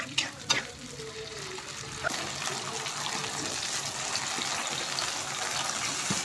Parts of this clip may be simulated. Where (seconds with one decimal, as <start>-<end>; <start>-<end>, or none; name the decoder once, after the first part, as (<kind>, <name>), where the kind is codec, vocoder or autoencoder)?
none